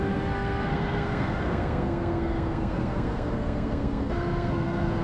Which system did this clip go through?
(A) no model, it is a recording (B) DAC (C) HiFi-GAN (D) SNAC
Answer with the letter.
D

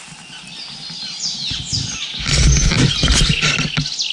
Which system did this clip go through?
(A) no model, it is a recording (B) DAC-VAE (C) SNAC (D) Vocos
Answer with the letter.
A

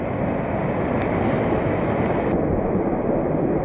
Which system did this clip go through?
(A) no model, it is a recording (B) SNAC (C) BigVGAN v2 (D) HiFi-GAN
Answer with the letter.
A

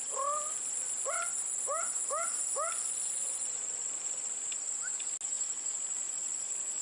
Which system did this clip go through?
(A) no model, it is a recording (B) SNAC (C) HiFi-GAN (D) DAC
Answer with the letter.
A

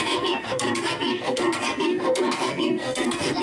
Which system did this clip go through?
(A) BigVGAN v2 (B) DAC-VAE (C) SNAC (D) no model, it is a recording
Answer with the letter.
C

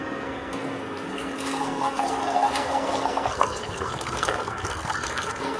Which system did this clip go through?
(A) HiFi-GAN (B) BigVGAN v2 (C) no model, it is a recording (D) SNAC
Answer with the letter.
D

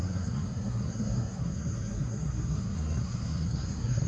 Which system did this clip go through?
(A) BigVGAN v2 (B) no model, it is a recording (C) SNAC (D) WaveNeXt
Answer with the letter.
C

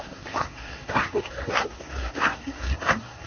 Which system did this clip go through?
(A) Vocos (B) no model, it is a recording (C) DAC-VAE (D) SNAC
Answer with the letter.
D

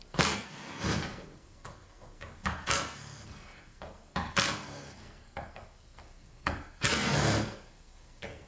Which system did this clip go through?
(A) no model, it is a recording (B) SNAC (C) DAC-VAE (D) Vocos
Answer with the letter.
B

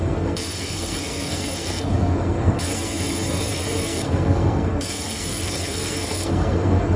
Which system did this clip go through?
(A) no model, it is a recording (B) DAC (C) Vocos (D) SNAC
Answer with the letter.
D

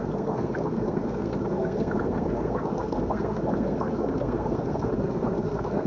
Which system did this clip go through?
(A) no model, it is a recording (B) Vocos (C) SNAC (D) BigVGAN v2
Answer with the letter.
C